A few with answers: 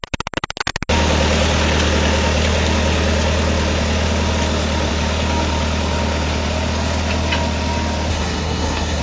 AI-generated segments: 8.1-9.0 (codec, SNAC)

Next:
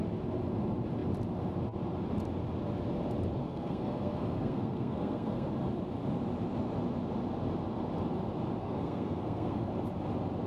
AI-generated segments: 3.4-5.5 (codec, SNAC); 8.6-9.7

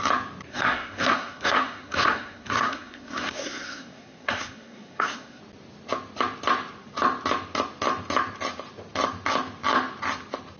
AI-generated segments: 0.5-5.4 (codec, SNAC)

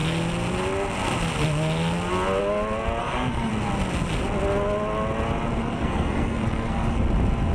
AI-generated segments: 3.0-3.5 (codec, SNAC); 5.6-7.0

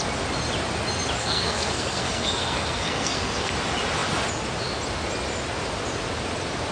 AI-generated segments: 1.2-3.5 (codec, SNAC)